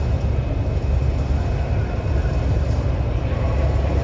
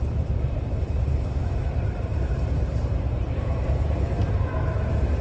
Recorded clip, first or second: first